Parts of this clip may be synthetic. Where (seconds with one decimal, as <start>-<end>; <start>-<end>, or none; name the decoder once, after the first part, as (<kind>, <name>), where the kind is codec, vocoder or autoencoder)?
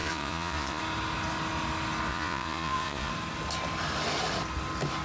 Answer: 0.0-0.8 (vocoder, Vocos); 2.1-3.1